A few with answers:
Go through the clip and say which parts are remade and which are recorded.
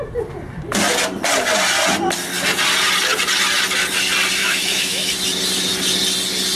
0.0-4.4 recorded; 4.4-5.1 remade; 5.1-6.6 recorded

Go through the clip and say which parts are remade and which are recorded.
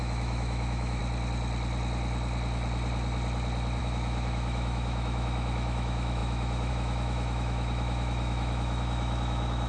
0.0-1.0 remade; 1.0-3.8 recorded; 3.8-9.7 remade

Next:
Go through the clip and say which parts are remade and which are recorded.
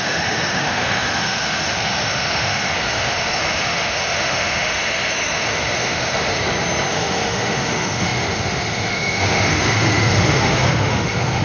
0.0-6.3 remade; 6.3-6.9 recorded; 6.9-11.4 remade